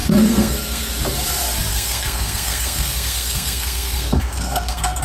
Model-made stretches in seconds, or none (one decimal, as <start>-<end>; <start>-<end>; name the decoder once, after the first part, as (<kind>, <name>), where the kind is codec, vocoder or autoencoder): 0.0-0.9 (codec, SNAC); 1.7-5.0